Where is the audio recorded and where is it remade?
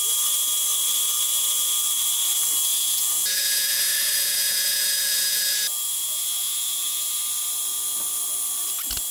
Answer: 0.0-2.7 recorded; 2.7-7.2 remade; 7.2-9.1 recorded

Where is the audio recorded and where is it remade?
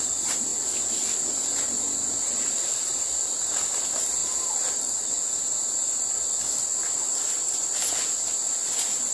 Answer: 0.0-9.1 recorded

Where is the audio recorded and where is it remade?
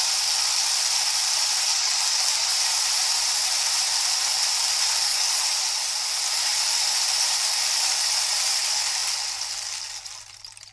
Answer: 0.0-1.7 recorded; 1.7-2.5 remade; 2.5-5.1 recorded; 5.1-5.8 remade; 5.8-10.7 recorded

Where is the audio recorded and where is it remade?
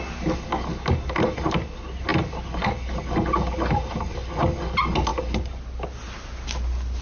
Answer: 0.0-7.0 recorded